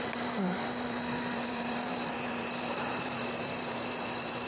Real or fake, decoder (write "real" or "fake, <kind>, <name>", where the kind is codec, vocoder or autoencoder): fake, vocoder, BigVGAN v2